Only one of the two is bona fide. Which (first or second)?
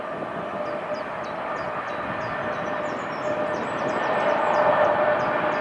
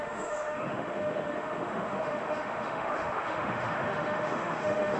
first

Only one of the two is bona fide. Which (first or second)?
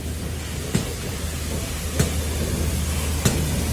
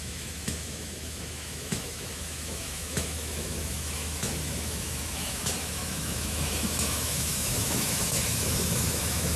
first